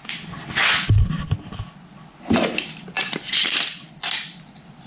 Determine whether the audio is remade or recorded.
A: recorded